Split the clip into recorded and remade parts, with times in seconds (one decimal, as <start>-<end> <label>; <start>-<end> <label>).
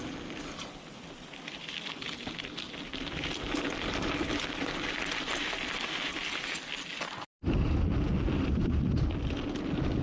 0.0-6.9 recorded; 6.9-7.9 remade; 7.9-10.0 recorded